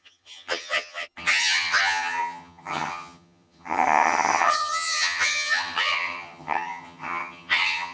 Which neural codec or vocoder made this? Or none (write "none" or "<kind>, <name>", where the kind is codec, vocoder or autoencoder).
vocoder, HiFi-GAN